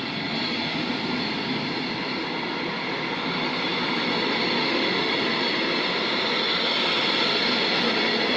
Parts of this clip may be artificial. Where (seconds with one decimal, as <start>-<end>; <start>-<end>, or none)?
4.6-5.1